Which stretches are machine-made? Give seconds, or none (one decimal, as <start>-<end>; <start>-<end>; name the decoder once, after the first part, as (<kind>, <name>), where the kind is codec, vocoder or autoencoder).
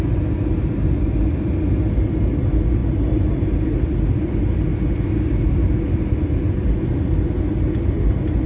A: none